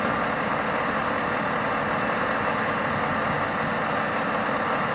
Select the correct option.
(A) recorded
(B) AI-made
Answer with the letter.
A